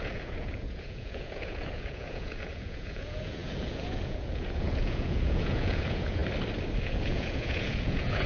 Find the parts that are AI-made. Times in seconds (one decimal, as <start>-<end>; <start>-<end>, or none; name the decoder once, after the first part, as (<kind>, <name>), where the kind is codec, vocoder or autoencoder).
0.0-6.2 (vocoder, Vocos); 6.8-8.3

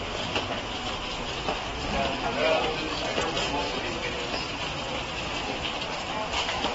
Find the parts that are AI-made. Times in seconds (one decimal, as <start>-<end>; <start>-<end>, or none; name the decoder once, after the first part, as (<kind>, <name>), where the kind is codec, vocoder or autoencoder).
none

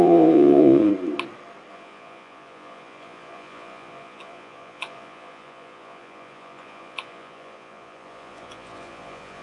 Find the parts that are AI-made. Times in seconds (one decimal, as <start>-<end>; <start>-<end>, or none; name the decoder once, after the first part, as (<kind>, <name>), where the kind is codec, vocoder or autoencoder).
0.0-0.9 (vocoder, Vocos); 1.7-9.4

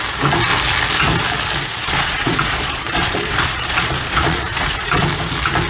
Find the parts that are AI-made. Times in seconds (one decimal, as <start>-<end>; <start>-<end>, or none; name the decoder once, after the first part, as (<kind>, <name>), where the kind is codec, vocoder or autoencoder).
1.7-5.0 (vocoder, Vocos)

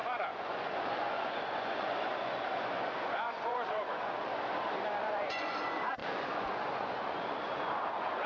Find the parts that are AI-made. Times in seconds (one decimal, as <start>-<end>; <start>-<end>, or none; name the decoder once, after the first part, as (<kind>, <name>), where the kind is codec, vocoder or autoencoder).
0.0-4.3 (vocoder, Vocos); 5.0-8.3